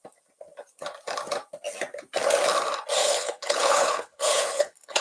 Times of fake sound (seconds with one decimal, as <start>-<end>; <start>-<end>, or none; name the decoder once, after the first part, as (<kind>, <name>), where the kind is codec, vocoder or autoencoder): 3.0-5.0 (codec, HILCodec)